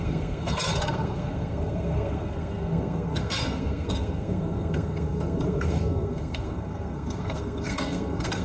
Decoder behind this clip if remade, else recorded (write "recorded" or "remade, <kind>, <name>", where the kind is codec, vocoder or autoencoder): remade, codec, SNAC